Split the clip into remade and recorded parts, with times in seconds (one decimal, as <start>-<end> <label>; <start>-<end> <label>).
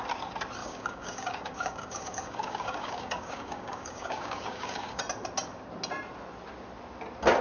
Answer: 0.0-0.6 recorded; 0.6-5.0 remade; 5.0-7.4 recorded